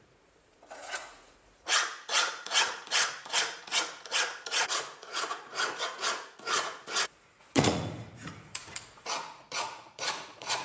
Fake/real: fake